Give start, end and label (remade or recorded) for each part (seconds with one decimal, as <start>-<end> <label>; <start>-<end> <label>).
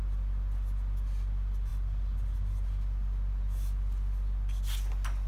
0.0-5.3 recorded